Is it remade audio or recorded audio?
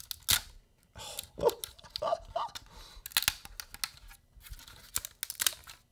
recorded